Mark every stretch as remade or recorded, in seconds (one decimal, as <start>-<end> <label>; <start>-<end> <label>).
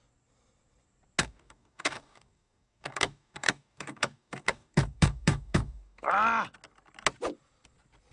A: 0.0-1.2 recorded; 1.2-6.1 remade; 6.1-8.1 recorded